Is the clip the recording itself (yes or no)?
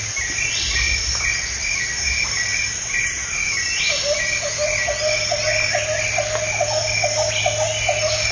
yes